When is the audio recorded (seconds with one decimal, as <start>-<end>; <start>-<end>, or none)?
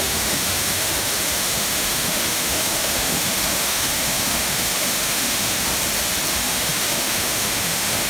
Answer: 5.7-6.3